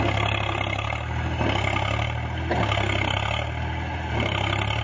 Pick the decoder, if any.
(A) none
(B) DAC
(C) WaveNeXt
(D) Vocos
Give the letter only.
A